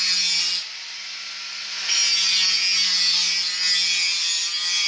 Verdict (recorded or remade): recorded